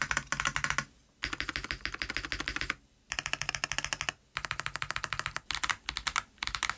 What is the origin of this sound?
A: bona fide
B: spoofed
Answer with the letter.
A